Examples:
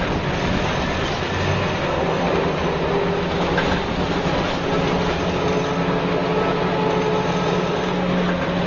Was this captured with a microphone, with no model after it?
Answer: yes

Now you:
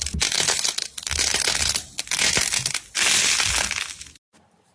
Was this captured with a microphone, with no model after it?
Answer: yes